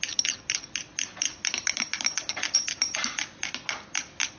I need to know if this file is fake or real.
real